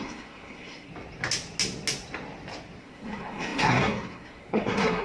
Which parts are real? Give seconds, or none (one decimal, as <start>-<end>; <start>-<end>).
0.9-2.8